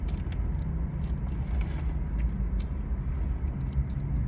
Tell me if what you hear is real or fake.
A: real